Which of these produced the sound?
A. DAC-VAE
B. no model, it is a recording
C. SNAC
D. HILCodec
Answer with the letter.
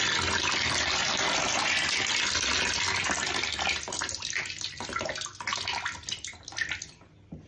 B